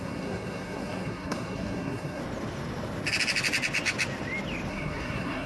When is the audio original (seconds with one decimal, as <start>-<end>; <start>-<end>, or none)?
2.2-4.7